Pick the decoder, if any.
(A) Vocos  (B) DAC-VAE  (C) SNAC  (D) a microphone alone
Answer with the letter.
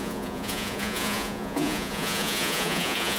A